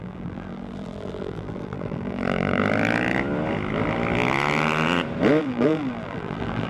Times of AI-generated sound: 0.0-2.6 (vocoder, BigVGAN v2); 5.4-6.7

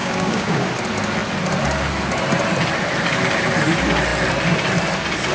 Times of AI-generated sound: 0.0-0.7 (codec, DAC)

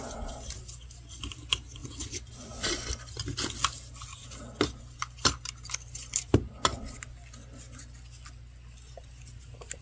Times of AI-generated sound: none

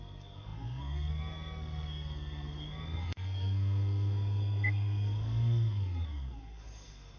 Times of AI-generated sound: 0.0-7.2 (codec, SNAC)

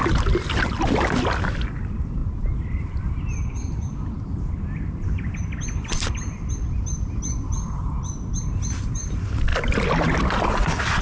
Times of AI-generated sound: none

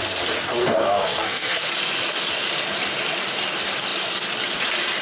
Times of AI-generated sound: 0.6-1.7 (codec, SNAC)

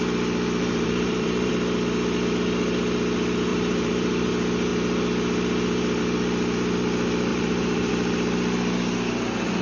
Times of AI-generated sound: 0.6-1.5 (vocoder, BigVGAN v2); 3.5-4.3; 7.3-7.9

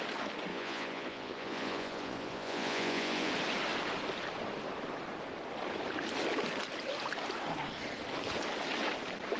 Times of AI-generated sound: 0.5-3.3 (vocoder, Vocos)